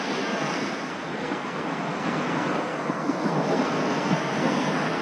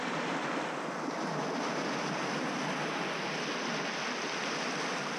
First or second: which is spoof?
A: first